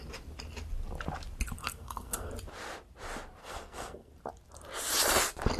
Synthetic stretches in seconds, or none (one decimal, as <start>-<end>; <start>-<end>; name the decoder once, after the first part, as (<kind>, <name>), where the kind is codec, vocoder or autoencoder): 1.6-2.3 (codec, SNAC); 3.4-4.1

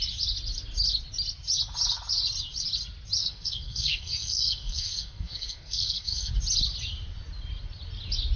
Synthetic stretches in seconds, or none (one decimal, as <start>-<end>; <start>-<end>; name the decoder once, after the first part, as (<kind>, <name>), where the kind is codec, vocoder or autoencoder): 3.2-6.3 (codec, SNAC)

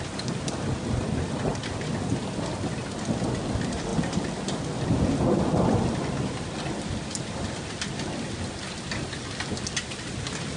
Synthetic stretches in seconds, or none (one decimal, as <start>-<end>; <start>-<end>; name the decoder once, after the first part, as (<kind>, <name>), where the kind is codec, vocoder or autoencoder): none

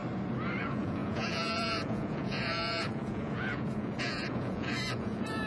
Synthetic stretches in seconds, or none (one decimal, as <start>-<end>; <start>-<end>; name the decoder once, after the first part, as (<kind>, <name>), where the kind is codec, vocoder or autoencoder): 0.6-5.5 (vocoder, Vocos)

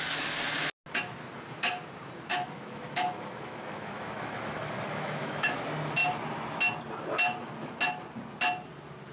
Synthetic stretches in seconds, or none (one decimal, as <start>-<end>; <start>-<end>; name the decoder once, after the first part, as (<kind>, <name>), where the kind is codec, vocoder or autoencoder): 2.3-5.6 (autoencoder, DAC-VAE)

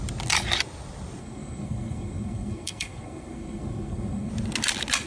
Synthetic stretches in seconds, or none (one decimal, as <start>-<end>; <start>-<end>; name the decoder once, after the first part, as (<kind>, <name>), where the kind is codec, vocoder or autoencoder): 1.2-4.3 (codec, SNAC)

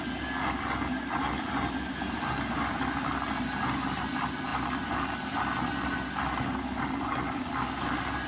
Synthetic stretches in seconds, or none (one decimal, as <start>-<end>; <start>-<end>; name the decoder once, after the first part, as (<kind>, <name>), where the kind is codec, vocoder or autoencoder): none